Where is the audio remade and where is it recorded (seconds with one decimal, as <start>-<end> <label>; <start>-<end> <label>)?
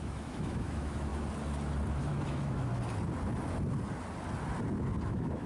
0.0-1.1 remade; 1.1-2.0 recorded; 2.0-2.7 remade; 2.7-5.1 recorded; 5.1-5.5 remade